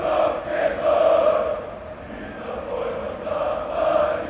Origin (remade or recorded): recorded